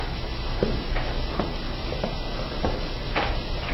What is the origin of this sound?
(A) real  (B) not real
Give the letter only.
A